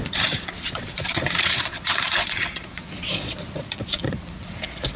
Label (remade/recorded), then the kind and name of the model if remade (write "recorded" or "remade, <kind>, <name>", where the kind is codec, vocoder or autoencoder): remade, vocoder, Vocos